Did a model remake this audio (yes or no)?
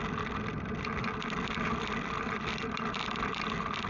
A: no